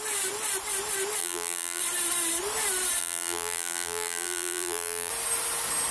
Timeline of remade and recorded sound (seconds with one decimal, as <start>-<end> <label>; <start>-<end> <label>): 0.0-1.2 recorded; 1.2-1.8 remade; 1.8-3.0 recorded; 3.0-5.1 remade; 5.1-5.9 recorded